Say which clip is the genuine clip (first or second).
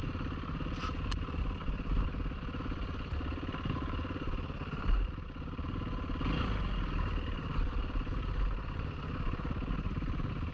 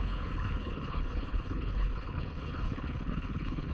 first